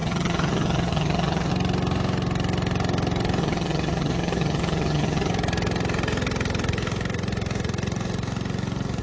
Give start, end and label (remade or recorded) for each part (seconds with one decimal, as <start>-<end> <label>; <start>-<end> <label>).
0.0-1.5 remade; 1.5-3.4 recorded; 3.4-5.3 remade; 5.3-9.0 recorded